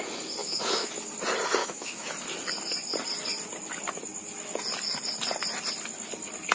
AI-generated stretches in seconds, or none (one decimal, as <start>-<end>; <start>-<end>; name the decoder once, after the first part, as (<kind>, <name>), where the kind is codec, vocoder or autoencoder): 0.4-0.9 (autoencoder, DAC-VAE); 1.6-2.1